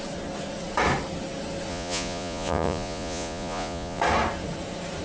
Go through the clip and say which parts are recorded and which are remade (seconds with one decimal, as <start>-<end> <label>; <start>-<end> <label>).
0.0-1.7 recorded; 1.7-4.0 remade; 4.0-5.0 recorded

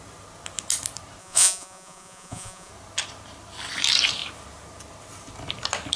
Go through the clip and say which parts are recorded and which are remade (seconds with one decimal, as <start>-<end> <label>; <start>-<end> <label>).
0.0-1.2 recorded; 1.2-2.7 remade; 2.7-6.0 recorded

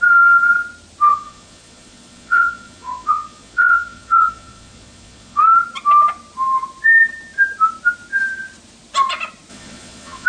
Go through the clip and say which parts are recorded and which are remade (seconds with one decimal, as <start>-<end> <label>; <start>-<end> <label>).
0.0-1.1 recorded; 1.1-5.4 remade; 5.4-9.5 recorded; 9.5-10.3 remade

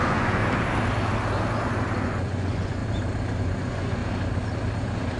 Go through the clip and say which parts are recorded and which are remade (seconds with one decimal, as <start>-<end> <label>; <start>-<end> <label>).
0.0-0.4 remade; 0.4-2.0 recorded; 2.0-2.8 remade; 2.8-3.4 recorded; 3.4-4.0 remade; 4.0-5.2 recorded